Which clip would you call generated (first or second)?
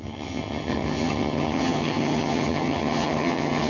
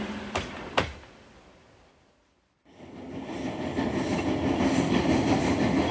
first